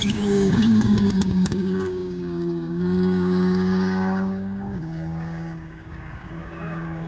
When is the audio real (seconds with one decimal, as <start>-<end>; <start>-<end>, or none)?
none